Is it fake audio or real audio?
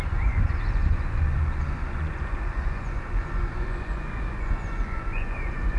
fake